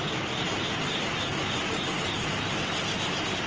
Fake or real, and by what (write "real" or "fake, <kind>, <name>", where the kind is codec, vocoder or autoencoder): real